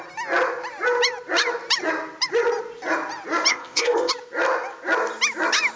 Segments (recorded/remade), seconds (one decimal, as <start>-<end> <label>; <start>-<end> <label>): 0.0-3.5 recorded; 3.5-4.1 remade; 4.1-5.8 recorded